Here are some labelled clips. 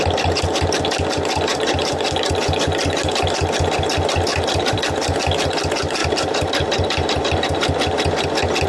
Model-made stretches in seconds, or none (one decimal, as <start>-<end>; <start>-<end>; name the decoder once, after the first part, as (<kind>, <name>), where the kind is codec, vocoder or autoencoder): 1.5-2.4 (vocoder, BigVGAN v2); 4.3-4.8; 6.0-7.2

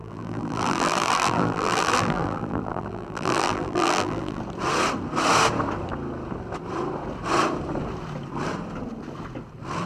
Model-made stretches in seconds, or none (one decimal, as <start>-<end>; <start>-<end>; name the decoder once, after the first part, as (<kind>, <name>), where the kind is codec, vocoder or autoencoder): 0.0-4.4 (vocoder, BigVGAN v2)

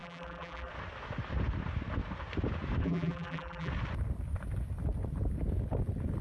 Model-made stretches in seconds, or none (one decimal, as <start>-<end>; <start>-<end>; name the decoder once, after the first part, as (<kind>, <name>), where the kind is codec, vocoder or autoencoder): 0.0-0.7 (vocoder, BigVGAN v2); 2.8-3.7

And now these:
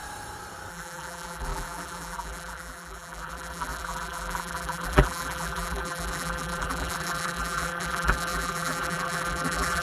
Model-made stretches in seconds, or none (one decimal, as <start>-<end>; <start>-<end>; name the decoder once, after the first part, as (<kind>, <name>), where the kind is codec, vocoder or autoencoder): 0.7-9.8 (vocoder, BigVGAN v2)

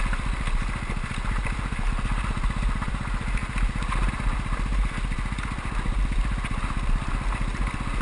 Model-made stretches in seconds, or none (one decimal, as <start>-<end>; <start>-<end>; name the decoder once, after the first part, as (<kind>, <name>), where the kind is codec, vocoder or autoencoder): none

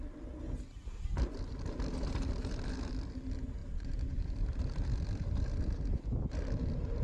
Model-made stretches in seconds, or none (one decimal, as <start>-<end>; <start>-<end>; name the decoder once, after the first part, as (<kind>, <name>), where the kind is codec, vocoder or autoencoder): 3.6-6.0 (vocoder, BigVGAN v2)